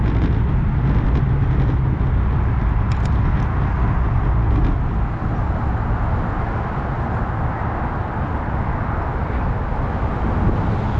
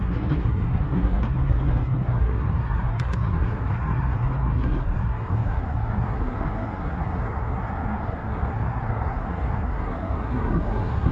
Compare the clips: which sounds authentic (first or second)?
first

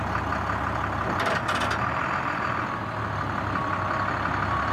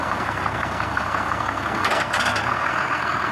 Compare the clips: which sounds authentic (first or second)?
first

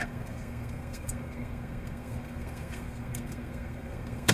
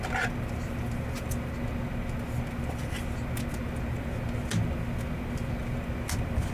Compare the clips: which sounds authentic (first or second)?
second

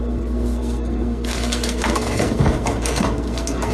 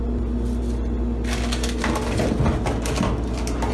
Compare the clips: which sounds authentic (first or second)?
second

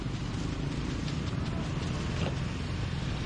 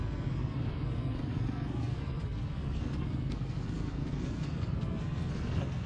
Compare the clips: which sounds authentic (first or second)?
first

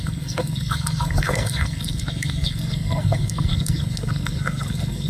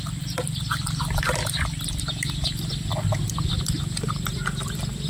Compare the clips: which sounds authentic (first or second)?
second